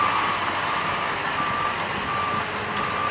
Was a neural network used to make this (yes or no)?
no